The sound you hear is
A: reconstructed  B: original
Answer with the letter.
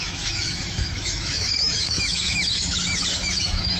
A